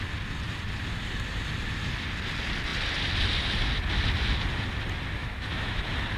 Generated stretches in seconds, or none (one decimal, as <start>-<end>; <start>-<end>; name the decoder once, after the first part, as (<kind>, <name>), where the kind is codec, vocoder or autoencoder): 5.2-5.8 (autoencoder, DAC-VAE)

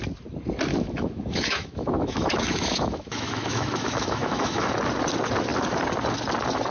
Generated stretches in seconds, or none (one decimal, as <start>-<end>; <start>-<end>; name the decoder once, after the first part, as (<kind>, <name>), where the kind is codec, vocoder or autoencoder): 0.7-4.7 (autoencoder, DAC-VAE)

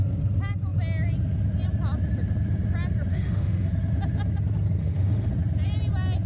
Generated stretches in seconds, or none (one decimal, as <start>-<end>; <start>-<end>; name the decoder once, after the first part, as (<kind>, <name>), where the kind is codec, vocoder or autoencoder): 3.1-3.7 (autoencoder, DAC-VAE); 4.8-5.3

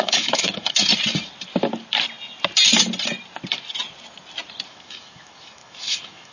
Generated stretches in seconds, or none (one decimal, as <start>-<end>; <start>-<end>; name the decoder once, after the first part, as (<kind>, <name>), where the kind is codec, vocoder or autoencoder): 0.0-0.9 (autoencoder, DAC-VAE); 4.7-6.3

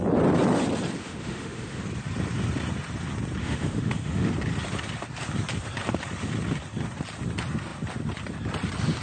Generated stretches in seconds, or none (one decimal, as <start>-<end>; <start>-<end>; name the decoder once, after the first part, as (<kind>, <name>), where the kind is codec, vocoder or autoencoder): 1.0-1.8 (autoencoder, DAC-VAE); 3.4-4.3